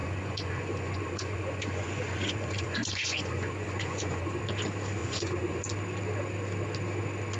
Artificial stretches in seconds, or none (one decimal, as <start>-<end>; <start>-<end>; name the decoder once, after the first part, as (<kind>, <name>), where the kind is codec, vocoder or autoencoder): 0.0-4.4 (vocoder, Vocos); 5.0-5.6